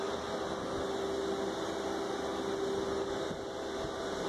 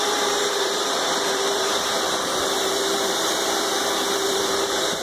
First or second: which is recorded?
first